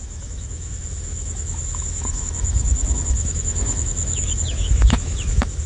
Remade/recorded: remade